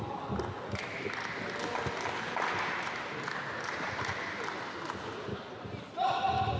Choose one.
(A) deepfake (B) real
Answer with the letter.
B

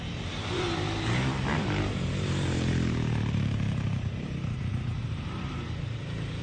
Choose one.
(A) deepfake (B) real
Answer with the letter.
A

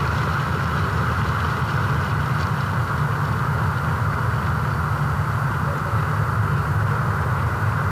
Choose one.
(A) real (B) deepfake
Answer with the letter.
A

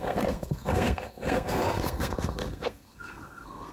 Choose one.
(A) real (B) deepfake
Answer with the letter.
B